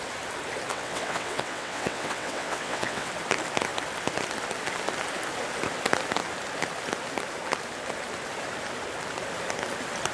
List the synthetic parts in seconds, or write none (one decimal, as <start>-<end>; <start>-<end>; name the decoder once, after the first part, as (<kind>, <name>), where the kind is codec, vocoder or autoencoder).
0.7-3.1 (vocoder, WaveNeXt)